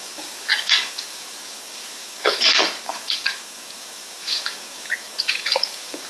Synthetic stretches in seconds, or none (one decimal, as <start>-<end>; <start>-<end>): 0.0-6.1